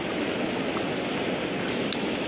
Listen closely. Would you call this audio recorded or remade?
recorded